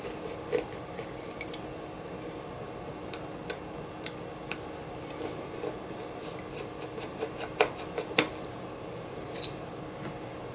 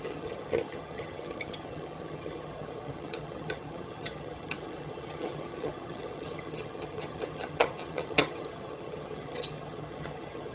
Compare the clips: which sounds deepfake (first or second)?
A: second